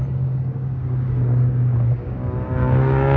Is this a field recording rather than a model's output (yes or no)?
no